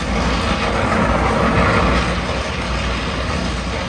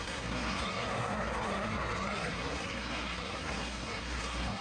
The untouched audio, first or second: first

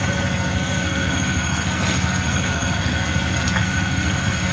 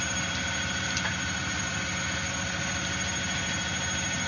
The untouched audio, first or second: second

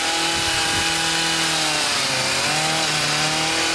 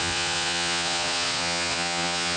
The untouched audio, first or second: first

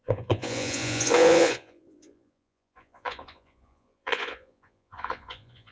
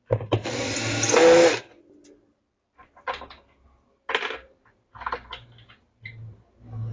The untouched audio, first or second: second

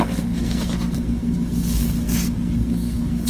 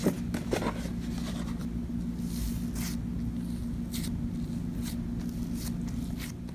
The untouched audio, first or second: second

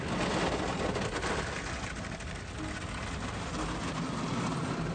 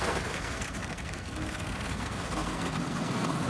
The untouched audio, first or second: first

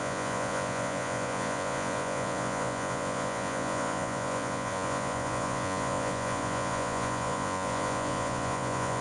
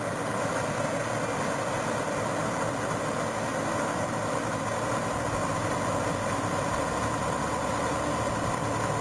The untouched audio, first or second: second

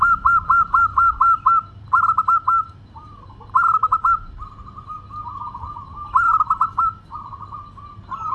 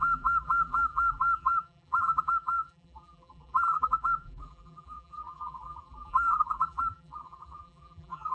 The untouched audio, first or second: first